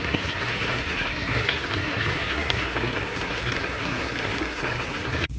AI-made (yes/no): yes